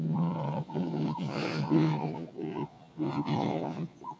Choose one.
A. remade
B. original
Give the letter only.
A